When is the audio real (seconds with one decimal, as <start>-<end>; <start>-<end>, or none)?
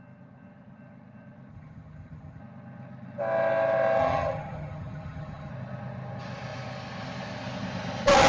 0.0-1.5; 2.4-4.0; 5.5-8.3